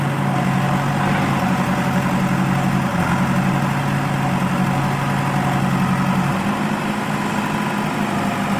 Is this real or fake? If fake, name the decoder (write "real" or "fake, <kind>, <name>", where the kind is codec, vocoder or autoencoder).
real